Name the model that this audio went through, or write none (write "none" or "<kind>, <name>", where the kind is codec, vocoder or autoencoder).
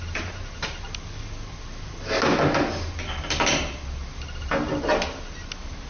none